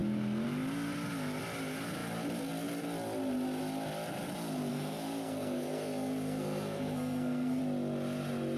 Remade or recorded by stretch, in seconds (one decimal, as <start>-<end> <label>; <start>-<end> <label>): 0.0-4.7 recorded; 4.7-7.6 remade; 7.6-8.6 recorded